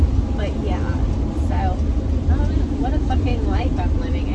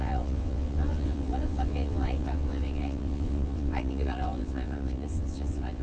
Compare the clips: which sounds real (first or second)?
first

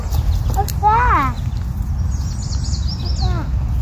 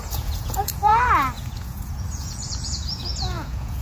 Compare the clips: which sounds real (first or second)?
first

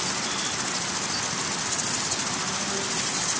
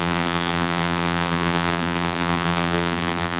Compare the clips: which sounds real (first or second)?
first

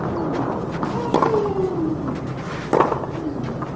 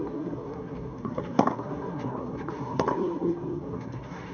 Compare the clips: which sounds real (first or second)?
first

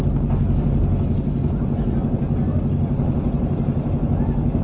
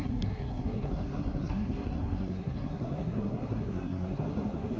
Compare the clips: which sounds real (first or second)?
first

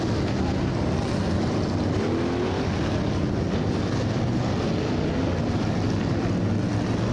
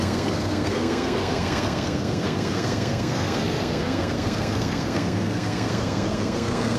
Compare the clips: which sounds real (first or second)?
first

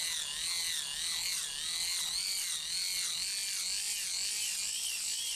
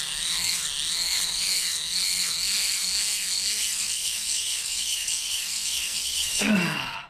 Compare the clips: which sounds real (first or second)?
first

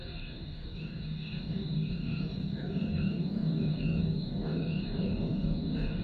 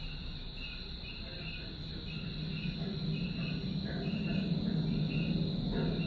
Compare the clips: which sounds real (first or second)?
second